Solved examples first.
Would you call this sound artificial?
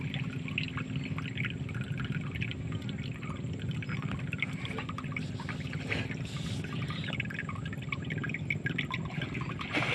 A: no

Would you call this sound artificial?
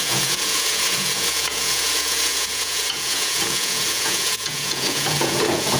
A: yes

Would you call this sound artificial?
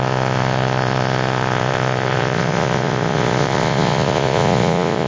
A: yes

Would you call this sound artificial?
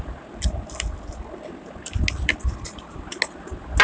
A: no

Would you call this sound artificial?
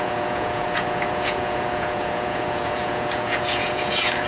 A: yes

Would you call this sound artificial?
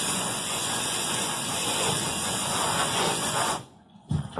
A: yes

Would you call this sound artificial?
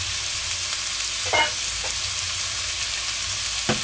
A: no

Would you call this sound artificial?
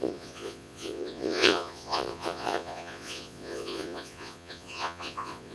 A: yes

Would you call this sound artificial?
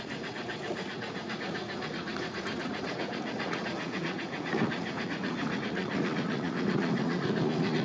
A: yes